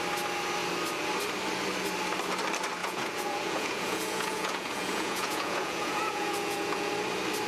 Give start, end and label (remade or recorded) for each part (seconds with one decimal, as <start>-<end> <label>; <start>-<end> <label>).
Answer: 0.0-2.8 recorded; 2.8-6.9 remade; 6.9-7.5 recorded